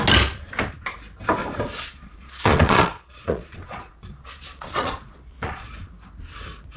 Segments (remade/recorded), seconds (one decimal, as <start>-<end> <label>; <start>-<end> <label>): 0.0-1.7 recorded; 1.7-5.7 remade; 5.7-6.8 recorded